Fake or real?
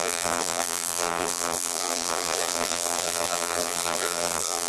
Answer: fake